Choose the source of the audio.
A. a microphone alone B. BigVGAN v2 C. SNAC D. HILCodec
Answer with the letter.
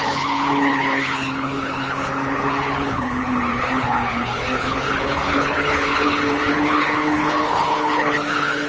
D